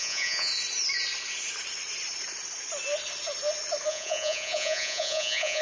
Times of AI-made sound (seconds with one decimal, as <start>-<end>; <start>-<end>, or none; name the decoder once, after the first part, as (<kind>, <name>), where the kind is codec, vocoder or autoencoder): 0.0-0.5 (vocoder, Vocos); 3.9-5.6